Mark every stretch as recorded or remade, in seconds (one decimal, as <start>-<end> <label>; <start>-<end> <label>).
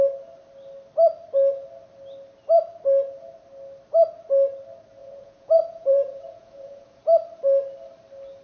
0.0-5.0 recorded; 5.0-7.0 remade; 7.0-8.4 recorded